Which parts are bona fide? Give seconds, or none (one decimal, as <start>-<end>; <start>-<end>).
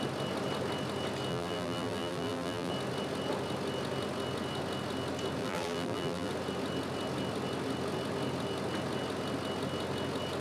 0.0-1.3; 2.7-5.4; 6.3-10.4